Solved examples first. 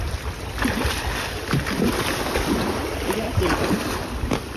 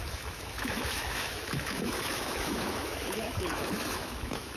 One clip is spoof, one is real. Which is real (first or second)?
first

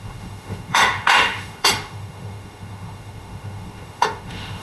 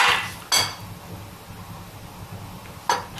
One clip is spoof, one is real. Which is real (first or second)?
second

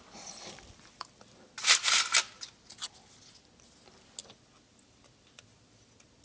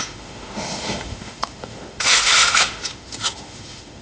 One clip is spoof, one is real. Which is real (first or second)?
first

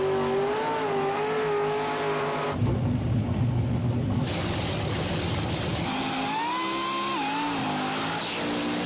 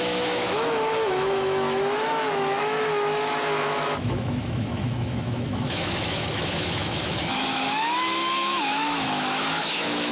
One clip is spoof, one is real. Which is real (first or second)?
first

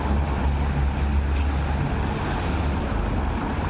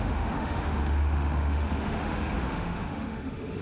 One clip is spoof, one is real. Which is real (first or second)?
first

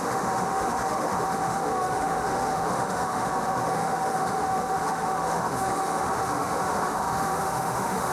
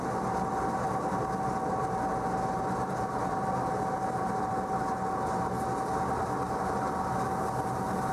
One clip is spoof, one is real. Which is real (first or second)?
second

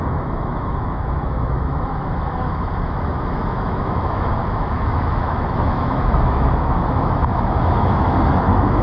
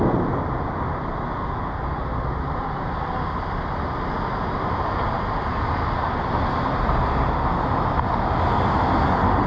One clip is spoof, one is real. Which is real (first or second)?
second